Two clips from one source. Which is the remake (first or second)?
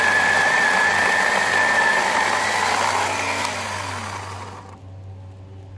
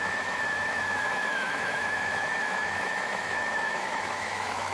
second